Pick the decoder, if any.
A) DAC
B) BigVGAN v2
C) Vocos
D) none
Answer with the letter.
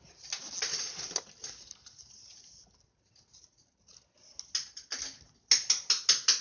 D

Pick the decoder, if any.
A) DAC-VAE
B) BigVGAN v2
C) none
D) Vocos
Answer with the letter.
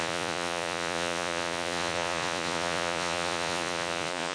D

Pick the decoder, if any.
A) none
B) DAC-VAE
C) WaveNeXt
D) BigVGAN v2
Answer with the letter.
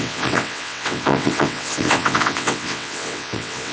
C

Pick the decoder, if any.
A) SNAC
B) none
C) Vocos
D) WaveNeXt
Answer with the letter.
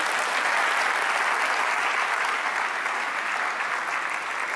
B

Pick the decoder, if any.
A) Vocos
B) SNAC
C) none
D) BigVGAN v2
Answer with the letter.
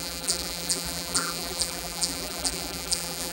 D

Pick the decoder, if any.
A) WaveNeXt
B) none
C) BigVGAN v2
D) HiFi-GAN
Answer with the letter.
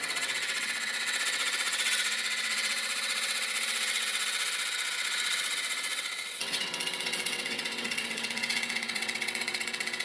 A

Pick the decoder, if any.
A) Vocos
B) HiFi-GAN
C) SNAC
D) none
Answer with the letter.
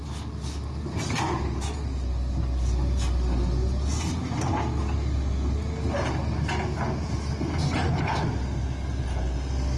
D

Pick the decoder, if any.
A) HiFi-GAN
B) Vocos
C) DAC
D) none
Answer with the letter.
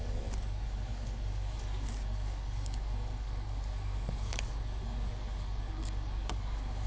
C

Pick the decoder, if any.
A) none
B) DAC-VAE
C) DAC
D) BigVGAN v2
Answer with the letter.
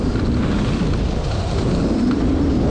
A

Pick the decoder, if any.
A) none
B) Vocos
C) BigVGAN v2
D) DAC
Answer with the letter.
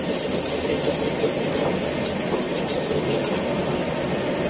A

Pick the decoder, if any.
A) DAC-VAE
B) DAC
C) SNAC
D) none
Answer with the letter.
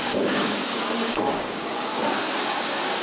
B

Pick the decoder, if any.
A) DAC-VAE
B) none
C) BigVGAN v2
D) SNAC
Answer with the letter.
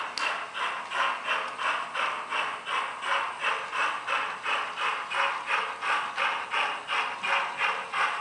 B